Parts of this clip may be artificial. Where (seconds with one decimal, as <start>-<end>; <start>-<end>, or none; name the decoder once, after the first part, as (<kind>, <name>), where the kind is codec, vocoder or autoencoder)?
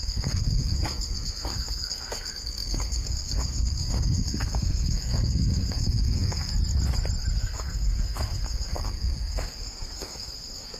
0.0-6.5 (codec, SNAC); 7.4-10.8